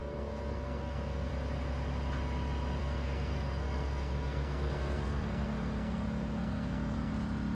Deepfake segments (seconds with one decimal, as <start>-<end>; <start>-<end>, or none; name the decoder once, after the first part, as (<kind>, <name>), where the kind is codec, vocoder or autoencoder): 0.0-1.3 (codec, SNAC); 2.8-7.1